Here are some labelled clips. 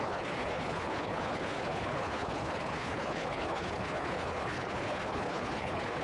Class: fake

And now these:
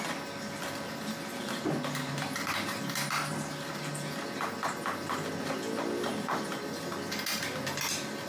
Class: real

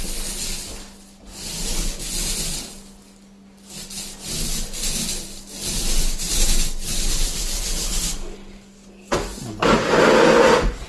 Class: real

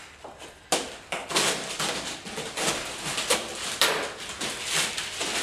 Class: fake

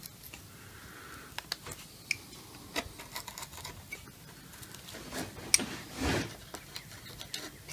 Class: real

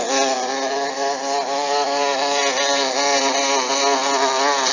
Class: real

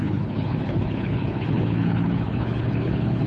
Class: fake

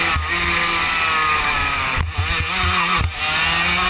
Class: real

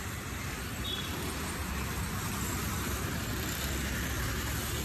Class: real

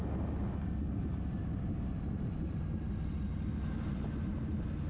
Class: real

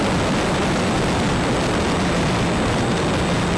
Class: real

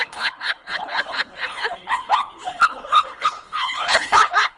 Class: fake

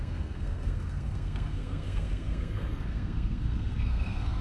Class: fake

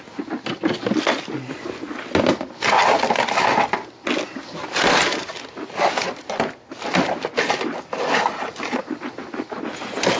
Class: real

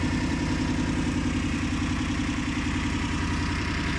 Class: fake